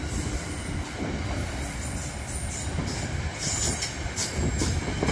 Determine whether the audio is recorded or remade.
recorded